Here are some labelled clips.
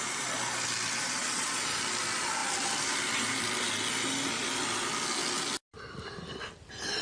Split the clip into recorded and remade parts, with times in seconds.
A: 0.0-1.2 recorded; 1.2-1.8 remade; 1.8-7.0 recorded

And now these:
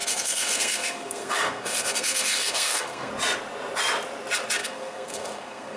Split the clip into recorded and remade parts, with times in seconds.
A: 0.0-3.1 remade; 3.1-4.6 recorded; 4.6-5.8 remade

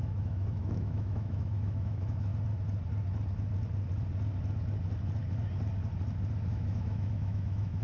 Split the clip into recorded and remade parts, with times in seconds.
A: 0.0-2.3 remade; 2.3-6.5 recorded; 6.5-7.8 remade

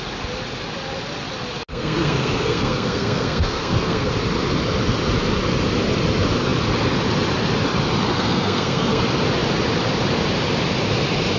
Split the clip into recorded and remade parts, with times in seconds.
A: 0.0-1.7 recorded; 1.7-4.1 remade; 4.1-8.1 recorded; 8.1-9.0 remade; 9.0-11.4 recorded

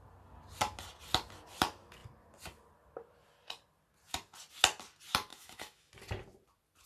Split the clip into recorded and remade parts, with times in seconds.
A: 0.0-5.3 recorded; 5.3-5.9 remade; 5.9-6.9 recorded

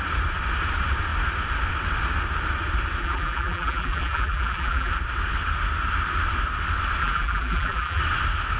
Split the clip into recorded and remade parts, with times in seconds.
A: 0.0-3.0 recorded; 3.0-4.9 remade; 4.9-7.0 recorded; 7.0-8.0 remade; 8.0-8.6 recorded

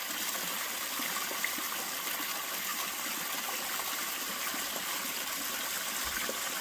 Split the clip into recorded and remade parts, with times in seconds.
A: 0.0-6.6 recorded

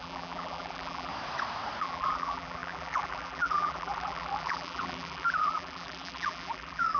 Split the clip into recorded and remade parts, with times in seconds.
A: 0.0-1.1 remade; 1.1-1.8 recorded; 1.8-7.0 remade